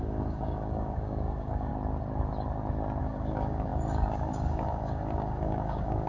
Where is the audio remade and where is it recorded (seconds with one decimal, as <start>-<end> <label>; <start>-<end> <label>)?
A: 0.0-1.7 remade; 1.7-3.0 recorded; 3.0-6.1 remade